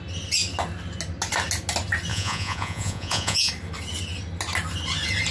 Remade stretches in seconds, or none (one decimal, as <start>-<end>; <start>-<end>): 2.1-3.5